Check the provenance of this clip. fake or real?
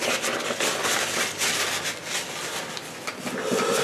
real